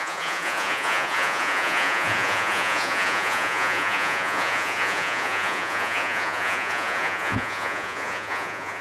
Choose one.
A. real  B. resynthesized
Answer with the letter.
B